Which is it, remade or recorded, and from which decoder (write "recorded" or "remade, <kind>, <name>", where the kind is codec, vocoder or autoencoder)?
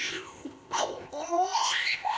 remade, codec, ZipCodec